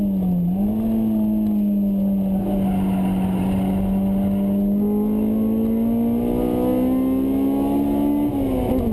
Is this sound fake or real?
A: real